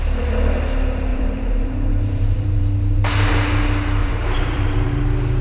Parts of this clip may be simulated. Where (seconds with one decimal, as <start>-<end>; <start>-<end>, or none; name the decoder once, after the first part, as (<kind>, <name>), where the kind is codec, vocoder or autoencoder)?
1.1-2.6 (vocoder, BigVGAN v2); 4.0-5.0